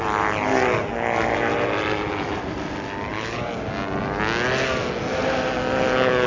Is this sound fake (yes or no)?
no